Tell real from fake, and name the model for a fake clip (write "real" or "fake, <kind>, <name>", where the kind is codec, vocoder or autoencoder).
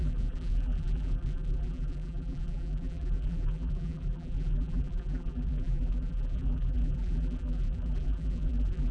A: fake, vocoder, BigVGAN v2